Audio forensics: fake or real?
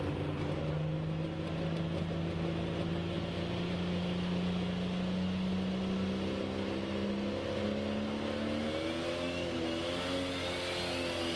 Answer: real